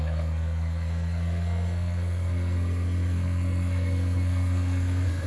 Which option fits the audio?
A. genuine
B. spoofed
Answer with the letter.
B